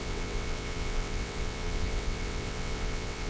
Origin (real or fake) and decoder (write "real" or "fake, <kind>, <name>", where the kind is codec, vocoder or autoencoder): fake, vocoder, WaveNeXt